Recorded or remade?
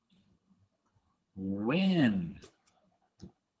remade